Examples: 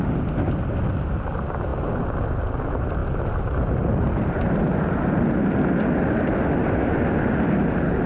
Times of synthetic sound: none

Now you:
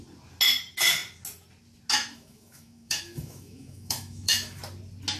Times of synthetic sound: 1.9-4.6 (autoencoder, DAC-VAE)

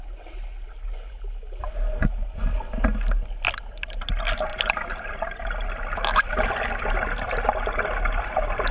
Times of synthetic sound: 4.5-6.6 (vocoder, BigVGAN v2)

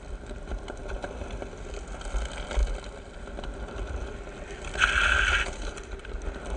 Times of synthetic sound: none

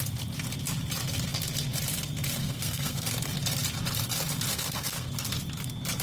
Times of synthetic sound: 2.4-3.1 (codec, SNAC); 4.5-5.1

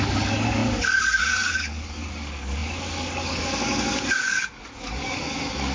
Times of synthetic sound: 0.0-5.7 (codec, DAC)

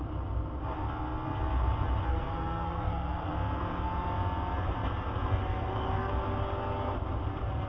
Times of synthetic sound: 2.1-3.3 (codec, SNAC); 5.4-6.1